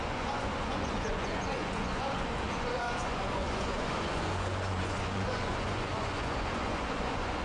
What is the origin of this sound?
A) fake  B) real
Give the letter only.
A